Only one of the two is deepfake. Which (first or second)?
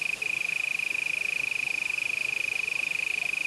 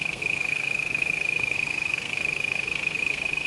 second